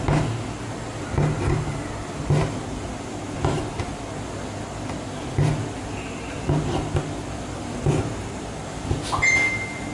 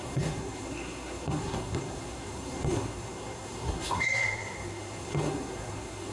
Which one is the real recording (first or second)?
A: first